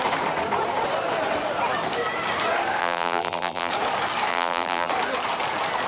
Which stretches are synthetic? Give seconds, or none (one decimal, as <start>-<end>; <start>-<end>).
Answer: 2.8-3.7; 4.3-4.9